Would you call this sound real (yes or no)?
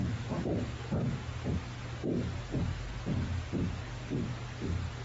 yes